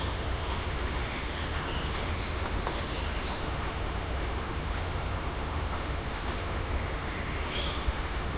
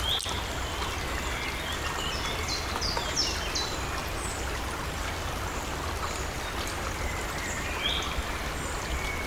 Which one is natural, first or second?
second